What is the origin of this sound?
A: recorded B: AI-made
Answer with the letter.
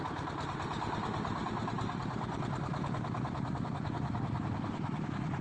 A